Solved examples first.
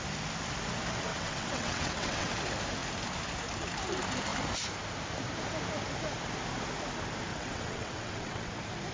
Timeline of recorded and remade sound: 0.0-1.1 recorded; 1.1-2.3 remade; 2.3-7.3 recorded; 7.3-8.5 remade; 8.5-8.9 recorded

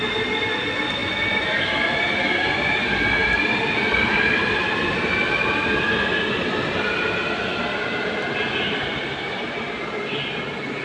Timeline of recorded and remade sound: 0.0-10.8 recorded

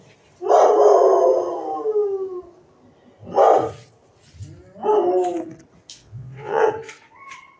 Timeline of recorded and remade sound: 0.0-5.9 recorded; 5.9-6.7 remade; 6.7-7.6 recorded

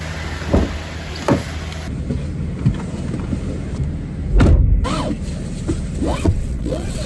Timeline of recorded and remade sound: 0.0-6.1 recorded; 6.1-7.1 remade